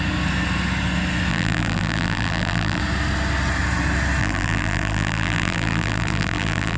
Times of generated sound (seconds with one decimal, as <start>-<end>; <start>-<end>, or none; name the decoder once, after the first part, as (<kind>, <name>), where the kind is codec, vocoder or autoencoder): 1.3-2.8 (vocoder, BigVGAN v2); 4.2-6.8